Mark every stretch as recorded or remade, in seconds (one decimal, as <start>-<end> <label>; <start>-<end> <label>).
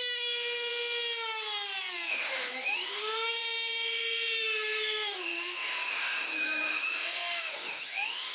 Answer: 0.0-0.7 remade; 0.7-2.1 recorded; 2.1-8.3 remade